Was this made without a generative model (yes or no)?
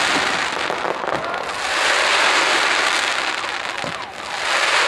yes